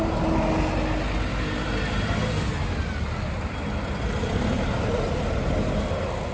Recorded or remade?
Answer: recorded